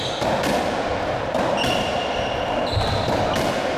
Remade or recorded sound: recorded